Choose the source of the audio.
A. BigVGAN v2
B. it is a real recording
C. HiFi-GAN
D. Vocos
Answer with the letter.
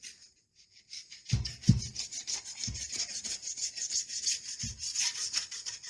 B